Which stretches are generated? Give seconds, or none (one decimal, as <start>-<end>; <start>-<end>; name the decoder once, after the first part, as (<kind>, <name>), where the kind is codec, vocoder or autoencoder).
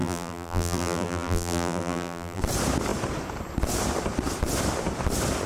0.0-2.4 (vocoder, BigVGAN v2)